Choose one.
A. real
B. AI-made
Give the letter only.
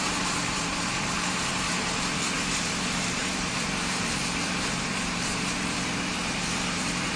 B